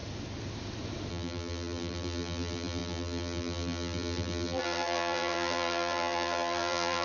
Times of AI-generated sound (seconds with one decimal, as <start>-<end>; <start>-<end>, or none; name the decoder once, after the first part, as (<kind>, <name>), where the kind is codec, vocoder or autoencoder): 1.1-7.0 (vocoder, BigVGAN v2)